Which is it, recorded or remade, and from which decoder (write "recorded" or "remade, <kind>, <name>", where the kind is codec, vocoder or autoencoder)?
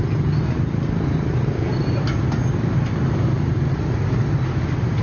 recorded